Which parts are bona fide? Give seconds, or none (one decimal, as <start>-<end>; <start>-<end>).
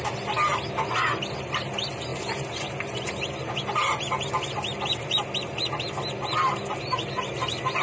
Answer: 0.0-7.8